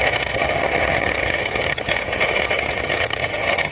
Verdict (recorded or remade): remade